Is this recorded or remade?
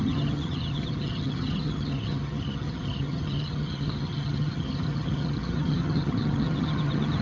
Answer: remade